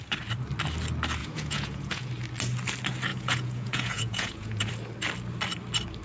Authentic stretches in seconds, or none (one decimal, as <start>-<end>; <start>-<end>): 0.0-1.2; 2.1-3.1; 4.7-6.0